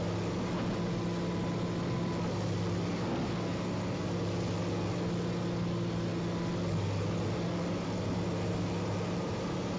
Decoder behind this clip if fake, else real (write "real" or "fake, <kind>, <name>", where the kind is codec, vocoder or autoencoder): real